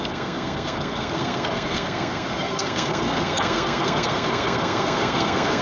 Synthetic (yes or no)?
yes